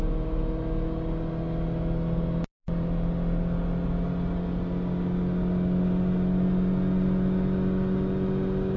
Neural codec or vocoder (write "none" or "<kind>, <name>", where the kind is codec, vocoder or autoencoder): none